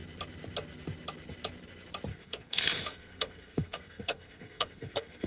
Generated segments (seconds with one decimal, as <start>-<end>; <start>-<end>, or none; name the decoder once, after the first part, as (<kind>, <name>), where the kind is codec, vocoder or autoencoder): 2.1-5.3 (codec, SNAC)